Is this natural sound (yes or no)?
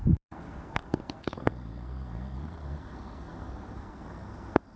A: no